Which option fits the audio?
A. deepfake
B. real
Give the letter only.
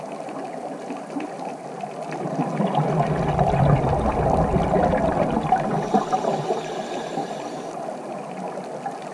B